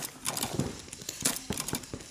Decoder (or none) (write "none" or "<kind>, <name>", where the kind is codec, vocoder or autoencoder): none